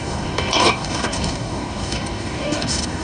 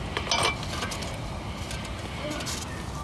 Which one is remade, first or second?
first